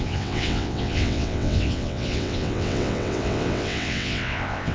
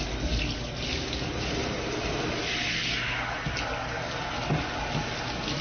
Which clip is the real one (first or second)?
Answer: second